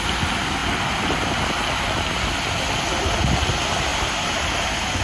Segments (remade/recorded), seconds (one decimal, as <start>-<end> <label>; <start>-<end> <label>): 0.0-3.9 recorded; 3.9-5.0 remade